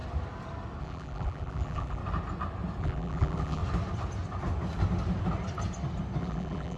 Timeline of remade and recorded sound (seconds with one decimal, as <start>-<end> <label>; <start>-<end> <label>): 0.0-0.8 recorded; 0.8-2.0 remade; 2.0-2.8 recorded; 2.8-3.6 remade; 3.6-6.2 recorded; 6.2-6.8 remade